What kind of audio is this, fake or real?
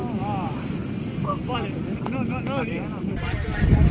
real